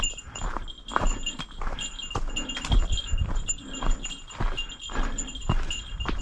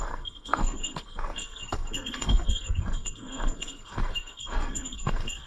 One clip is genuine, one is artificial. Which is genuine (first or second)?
first